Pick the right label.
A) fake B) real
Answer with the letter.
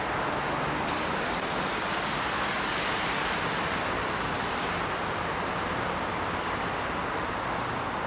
B